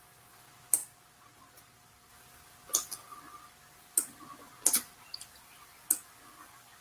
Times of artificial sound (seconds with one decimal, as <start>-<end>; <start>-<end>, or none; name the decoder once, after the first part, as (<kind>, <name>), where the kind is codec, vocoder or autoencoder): none